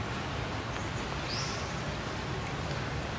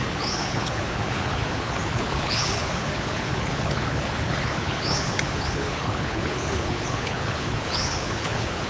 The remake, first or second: second